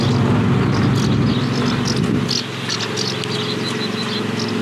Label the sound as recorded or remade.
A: recorded